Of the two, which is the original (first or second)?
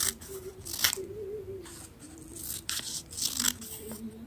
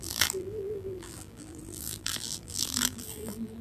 first